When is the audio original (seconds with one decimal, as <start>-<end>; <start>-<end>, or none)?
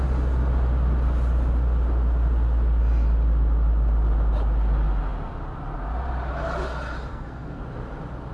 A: 0.0-7.1; 7.6-8.3